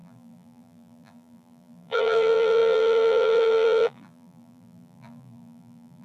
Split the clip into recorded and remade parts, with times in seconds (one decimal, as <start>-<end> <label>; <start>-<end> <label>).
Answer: 0.0-6.0 remade